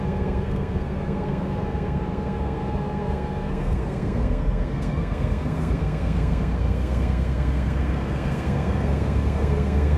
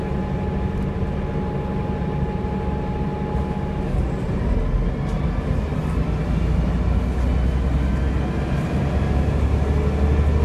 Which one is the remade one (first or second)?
first